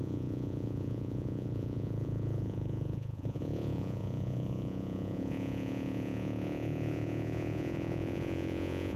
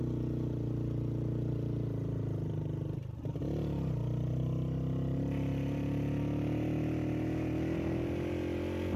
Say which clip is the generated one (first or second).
first